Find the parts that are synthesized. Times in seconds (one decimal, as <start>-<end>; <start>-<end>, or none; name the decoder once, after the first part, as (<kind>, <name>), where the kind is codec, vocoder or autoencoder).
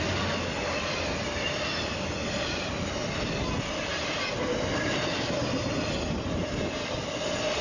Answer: none